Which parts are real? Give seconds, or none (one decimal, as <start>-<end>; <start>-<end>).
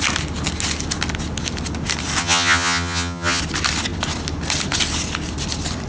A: 0.0-2.2; 3.4-5.9